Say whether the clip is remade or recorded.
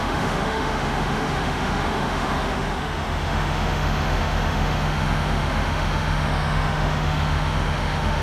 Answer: remade